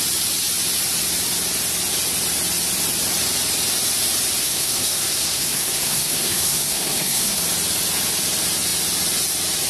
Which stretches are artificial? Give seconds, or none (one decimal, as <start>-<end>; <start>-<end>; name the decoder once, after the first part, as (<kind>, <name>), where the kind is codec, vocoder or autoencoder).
4.4-7.4 (codec, SNAC)